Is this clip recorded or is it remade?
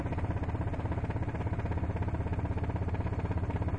recorded